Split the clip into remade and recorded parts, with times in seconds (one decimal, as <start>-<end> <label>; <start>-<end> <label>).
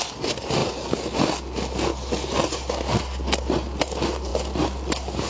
0.0-5.3 recorded